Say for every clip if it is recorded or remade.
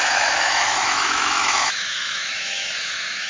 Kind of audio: remade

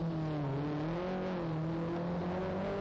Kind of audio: recorded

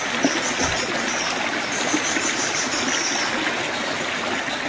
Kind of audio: recorded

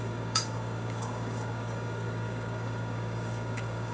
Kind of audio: remade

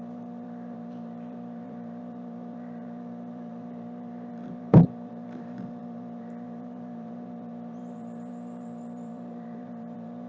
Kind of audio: remade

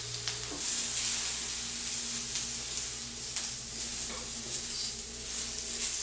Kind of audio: recorded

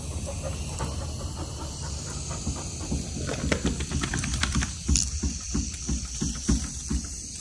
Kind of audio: recorded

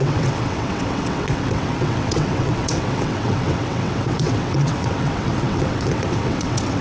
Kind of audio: remade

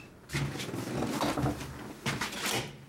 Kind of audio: recorded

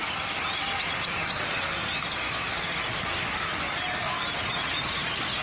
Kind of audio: recorded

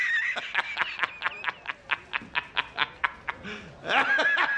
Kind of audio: recorded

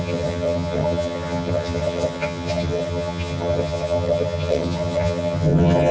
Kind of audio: remade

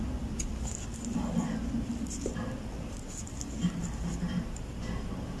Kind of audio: recorded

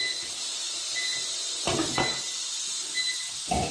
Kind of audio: recorded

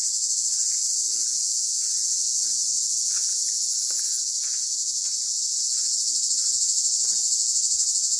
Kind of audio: remade